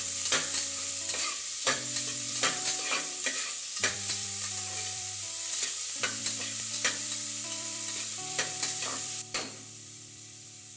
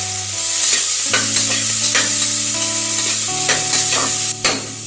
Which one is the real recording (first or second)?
second